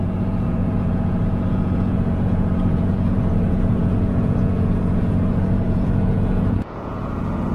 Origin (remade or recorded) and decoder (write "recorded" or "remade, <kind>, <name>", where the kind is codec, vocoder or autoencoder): remade, vocoder, Vocos